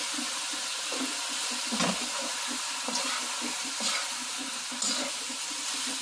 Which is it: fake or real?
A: real